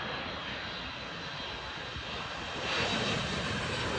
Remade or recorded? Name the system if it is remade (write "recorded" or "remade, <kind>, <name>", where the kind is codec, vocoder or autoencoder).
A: recorded